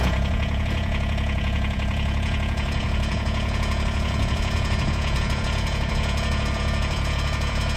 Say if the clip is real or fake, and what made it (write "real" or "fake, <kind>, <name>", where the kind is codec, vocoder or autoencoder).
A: fake, vocoder, Vocos